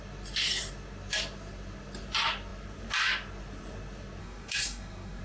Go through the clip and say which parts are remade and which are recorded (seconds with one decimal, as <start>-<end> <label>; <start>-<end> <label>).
0.0-4.2 recorded; 4.2-5.2 remade